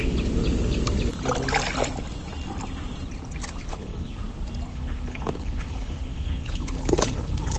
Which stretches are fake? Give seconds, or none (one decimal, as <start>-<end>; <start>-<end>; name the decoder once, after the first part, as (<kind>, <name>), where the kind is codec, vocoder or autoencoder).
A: 3.7-4.2 (codec, HILCodec); 4.7-7.6